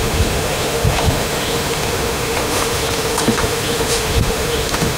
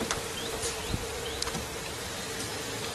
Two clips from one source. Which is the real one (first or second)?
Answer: second